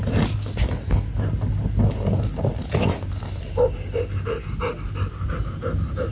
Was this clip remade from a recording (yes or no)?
no